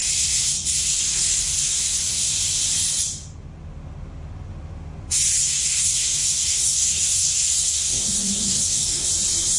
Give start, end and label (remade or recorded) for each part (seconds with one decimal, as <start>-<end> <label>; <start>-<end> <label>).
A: 0.0-2.3 remade; 2.3-5.4 recorded; 5.4-9.1 remade; 9.1-9.6 recorded